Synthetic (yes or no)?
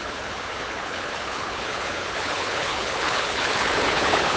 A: yes